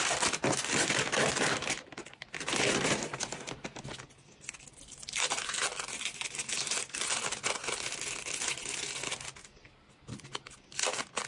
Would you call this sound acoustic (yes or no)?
yes